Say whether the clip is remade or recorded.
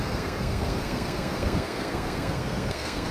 remade